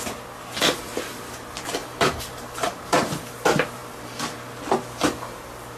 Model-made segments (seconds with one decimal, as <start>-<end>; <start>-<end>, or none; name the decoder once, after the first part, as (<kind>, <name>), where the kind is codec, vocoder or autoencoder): 0.8-1.4 (vocoder, BigVGAN v2); 1.8-3.2